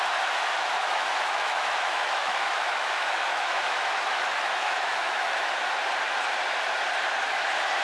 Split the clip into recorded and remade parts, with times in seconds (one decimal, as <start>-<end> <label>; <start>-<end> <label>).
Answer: 0.0-0.8 recorded; 0.8-5.5 remade; 5.5-7.8 recorded